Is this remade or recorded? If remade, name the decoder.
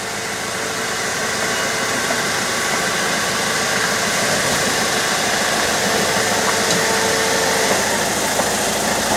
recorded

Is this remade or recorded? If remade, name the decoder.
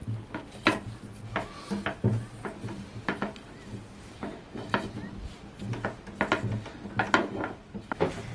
recorded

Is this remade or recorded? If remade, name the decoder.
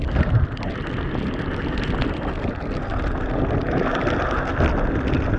recorded